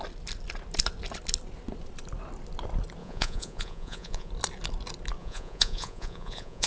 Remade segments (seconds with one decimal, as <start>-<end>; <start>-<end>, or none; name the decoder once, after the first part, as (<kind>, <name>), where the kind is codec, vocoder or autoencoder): 3.0-4.3 (vocoder, Vocos); 5.2-6.7